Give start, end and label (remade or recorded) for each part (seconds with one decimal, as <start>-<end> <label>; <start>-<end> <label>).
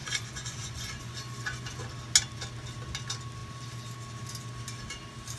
0.0-1.8 remade; 1.8-5.4 recorded